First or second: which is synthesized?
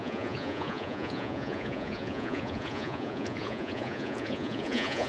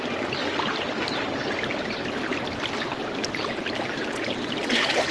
first